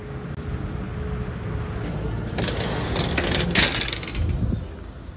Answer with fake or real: real